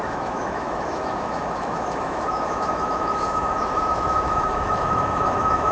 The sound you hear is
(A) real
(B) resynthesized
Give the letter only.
B